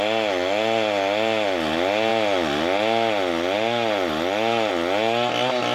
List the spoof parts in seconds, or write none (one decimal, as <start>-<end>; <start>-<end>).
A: none

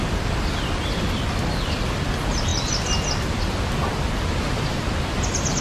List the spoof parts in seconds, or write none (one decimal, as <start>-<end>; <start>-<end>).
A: none

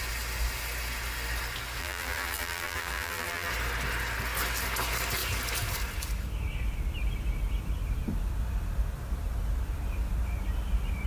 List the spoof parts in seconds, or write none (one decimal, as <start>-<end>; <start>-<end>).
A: 1.8-3.5

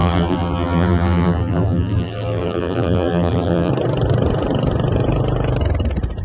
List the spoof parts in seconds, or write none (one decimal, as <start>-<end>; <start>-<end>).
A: 0.0-3.7

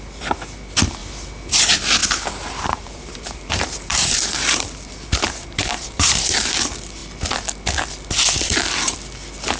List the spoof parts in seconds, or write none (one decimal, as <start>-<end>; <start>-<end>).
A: 2.0-6.5

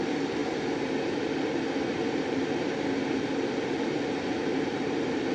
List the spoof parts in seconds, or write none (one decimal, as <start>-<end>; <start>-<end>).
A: 4.4-5.3

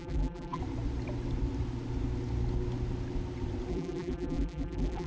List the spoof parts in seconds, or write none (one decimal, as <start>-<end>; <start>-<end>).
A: 0.0-0.6; 3.7-5.1

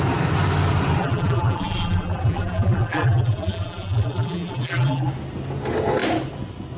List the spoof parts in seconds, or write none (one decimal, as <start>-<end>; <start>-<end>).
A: 1.0-5.1